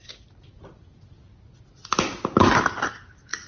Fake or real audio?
real